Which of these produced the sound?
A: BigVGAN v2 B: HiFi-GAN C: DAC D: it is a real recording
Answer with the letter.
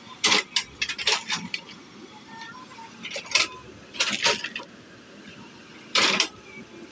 A